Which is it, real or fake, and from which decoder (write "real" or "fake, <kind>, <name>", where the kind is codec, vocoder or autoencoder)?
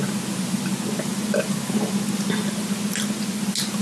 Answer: real